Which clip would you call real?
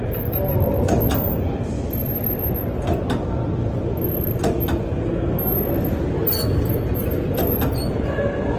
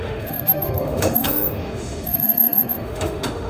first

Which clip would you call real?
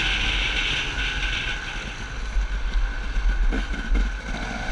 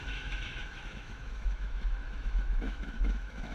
first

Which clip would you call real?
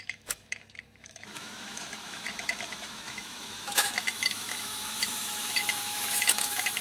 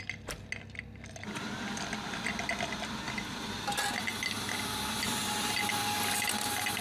second